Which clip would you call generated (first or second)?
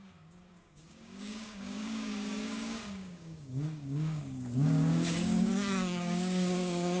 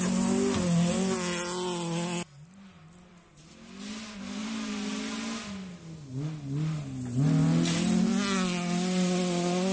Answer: first